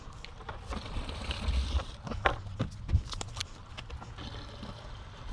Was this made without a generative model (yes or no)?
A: yes